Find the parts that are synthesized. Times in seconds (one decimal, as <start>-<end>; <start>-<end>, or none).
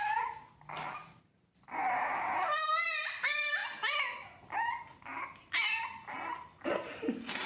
none